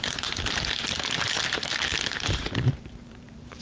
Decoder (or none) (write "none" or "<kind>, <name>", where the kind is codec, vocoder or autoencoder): vocoder, BigVGAN v2